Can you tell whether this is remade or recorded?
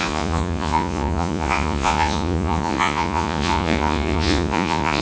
remade